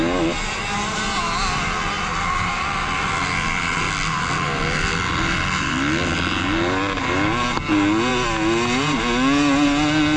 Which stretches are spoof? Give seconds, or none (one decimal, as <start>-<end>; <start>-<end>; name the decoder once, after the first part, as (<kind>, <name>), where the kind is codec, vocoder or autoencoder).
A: none